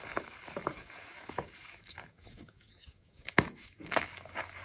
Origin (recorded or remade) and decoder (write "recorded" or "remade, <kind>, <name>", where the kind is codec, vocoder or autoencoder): remade, codec, DAC